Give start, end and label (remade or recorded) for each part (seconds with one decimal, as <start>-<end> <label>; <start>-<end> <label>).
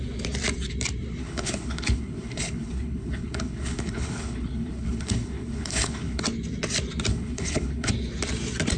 0.0-1.2 recorded; 1.2-6.2 remade; 6.2-7.1 recorded; 7.1-7.9 remade; 7.9-8.8 recorded